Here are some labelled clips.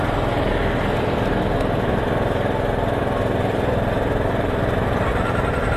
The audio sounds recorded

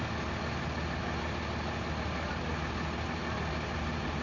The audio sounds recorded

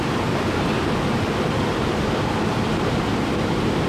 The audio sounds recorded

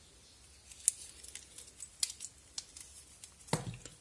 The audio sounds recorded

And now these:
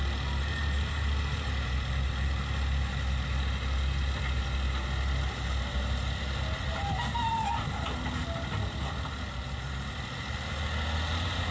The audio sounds recorded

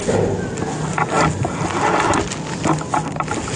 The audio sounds recorded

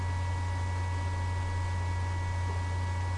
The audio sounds recorded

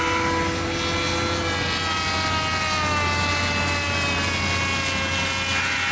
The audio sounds recorded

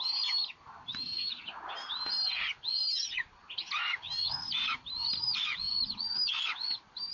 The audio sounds recorded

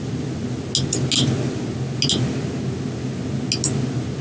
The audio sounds recorded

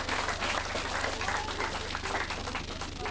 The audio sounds recorded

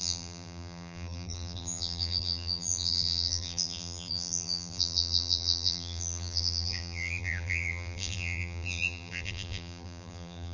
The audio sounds remade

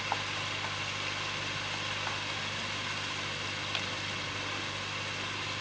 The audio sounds recorded